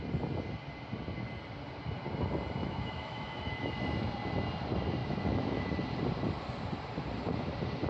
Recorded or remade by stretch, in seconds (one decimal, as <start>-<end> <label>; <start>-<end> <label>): 0.0-2.6 recorded; 2.6-3.7 remade; 3.7-5.0 recorded; 5.0-5.7 remade; 5.7-7.9 recorded